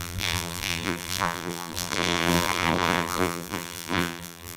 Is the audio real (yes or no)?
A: no